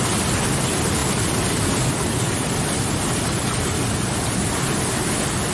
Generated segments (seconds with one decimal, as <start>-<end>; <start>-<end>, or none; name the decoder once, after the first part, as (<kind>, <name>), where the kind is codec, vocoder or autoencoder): none